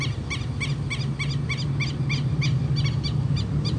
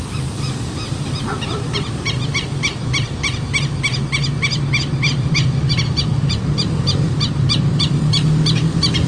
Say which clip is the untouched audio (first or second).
first